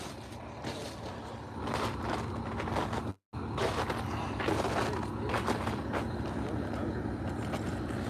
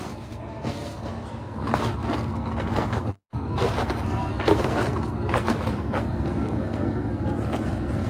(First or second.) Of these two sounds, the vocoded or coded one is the second